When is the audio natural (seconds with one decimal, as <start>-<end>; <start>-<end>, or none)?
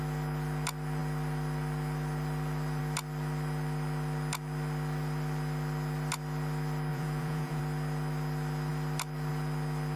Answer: 0.0-6.9; 7.6-10.0